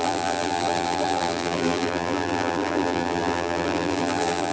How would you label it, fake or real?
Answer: fake